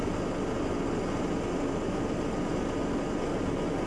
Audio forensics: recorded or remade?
recorded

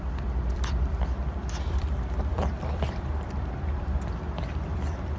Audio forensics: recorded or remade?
remade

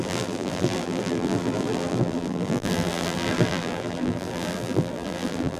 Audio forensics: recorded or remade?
remade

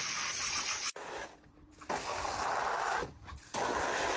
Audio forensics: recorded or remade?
recorded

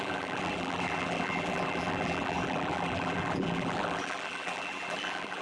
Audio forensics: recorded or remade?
remade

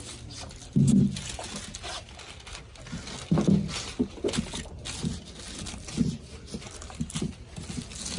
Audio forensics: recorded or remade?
recorded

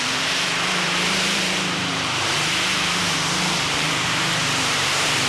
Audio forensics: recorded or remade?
remade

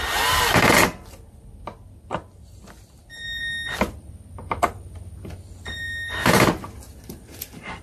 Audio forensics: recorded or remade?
recorded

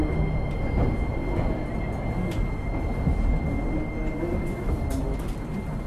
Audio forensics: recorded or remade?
recorded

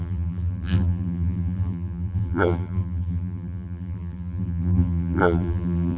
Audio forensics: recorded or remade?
remade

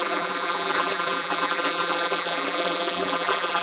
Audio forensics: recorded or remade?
remade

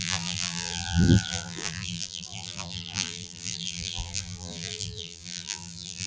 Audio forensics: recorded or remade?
remade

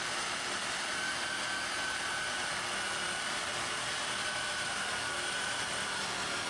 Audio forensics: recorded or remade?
recorded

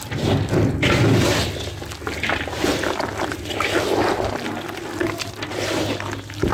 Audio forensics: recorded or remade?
recorded